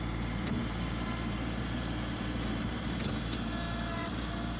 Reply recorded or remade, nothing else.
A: remade